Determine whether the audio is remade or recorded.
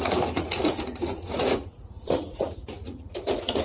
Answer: remade